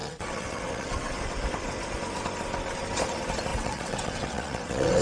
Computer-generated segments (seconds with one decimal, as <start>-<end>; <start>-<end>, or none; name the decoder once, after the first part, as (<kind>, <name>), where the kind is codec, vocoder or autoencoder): 0.0-1.2 (vocoder, WaveNeXt); 3.5-5.0